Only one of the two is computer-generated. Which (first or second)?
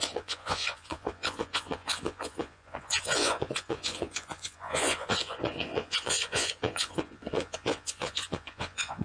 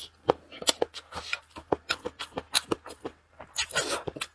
first